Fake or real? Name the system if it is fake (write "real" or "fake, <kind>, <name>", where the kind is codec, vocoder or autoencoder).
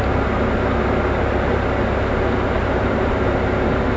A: real